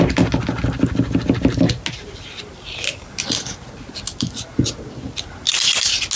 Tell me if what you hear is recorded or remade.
recorded